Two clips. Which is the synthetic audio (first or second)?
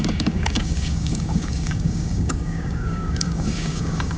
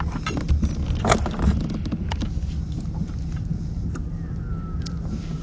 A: first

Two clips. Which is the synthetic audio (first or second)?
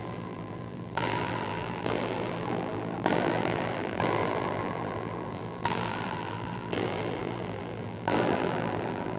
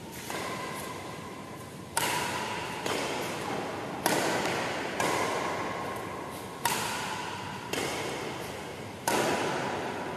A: first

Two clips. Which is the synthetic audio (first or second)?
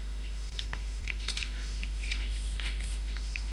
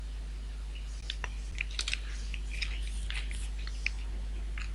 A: first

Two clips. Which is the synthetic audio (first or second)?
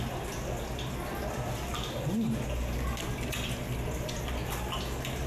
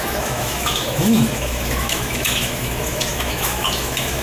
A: second